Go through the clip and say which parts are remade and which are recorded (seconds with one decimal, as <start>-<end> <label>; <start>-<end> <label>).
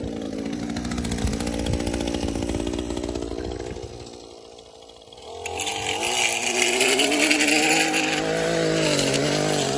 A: 0.0-9.8 recorded